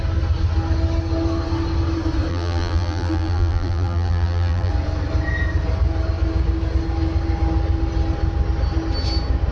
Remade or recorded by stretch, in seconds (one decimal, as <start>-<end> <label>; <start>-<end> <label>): 0.0-2.3 recorded; 2.3-4.7 remade; 4.7-9.5 recorded